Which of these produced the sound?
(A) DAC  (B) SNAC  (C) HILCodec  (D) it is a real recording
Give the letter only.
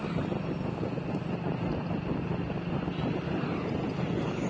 D